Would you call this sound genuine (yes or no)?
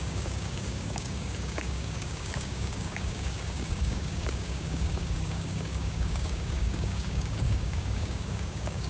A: no